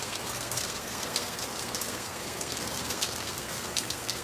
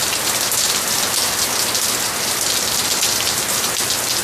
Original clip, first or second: second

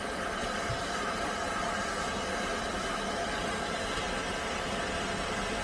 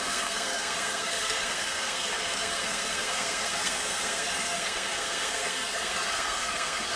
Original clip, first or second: first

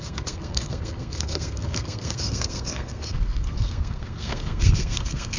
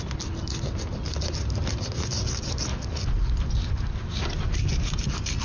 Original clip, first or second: second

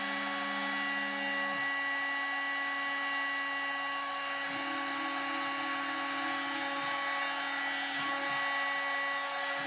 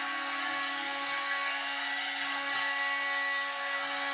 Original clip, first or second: first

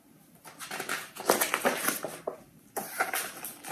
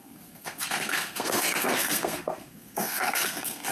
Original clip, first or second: first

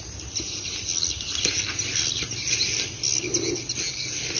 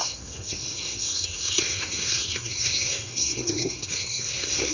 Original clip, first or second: first